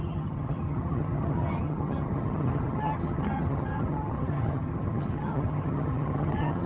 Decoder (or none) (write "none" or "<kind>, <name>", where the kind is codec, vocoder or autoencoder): vocoder, HiFi-GAN